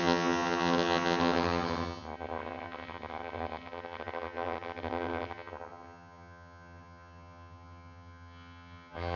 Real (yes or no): no